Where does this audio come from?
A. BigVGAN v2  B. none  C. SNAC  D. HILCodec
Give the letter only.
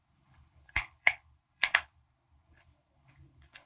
D